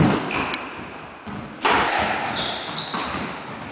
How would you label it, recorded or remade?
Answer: recorded